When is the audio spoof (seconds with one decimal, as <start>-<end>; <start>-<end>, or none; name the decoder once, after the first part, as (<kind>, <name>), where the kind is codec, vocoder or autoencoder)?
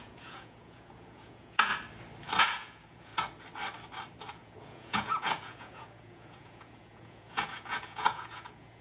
0.0-1.7 (vocoder, Vocos); 2.4-3.1; 4.3-8.8